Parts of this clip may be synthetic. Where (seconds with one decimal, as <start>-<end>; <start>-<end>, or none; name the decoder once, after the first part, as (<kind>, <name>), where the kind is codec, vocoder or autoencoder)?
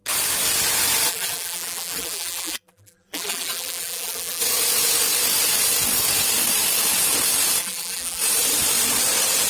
1.1-4.4 (vocoder, BigVGAN v2); 7.6-8.2